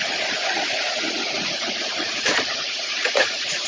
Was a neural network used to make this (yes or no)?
yes